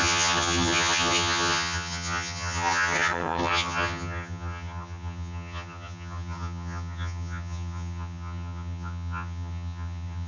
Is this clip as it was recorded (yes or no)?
no